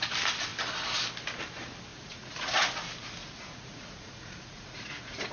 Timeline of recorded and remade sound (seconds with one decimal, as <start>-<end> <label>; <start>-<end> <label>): 0.0-1.9 recorded; 1.9-2.7 remade; 2.7-3.2 recorded; 3.2-5.3 remade